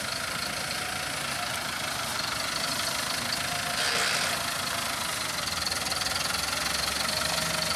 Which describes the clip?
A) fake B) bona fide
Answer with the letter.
B